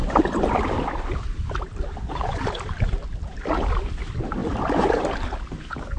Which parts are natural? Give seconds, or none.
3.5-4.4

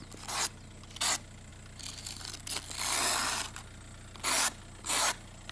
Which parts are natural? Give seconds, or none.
0.0-5.5

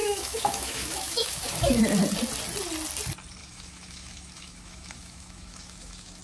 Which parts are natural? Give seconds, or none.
1.8-3.4

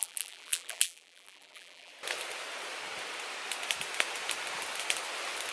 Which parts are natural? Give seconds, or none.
1.9-5.5

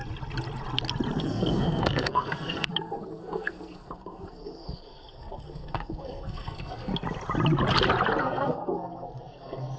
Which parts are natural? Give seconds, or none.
0.0-1.2; 6.9-8.2

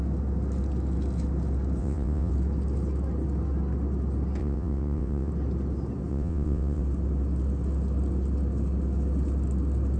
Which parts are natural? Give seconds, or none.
0.0-1.8; 2.3-4.4; 5.3-6.1; 6.8-10.0

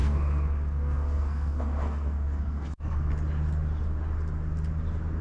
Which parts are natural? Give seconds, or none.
3.1-5.2

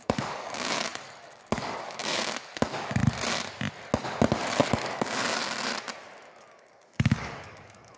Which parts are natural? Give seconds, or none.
3.0-4.7; 5.4-6.2